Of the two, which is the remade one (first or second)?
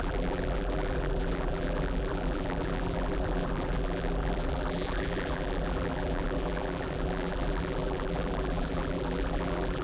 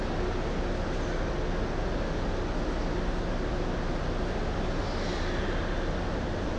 first